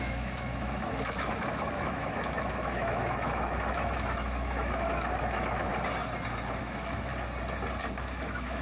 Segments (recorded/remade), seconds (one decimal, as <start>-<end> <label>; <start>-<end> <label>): 0.0-5.7 remade; 5.7-6.6 recorded; 6.6-7.1 remade; 7.1-7.9 recorded; 7.9-8.6 remade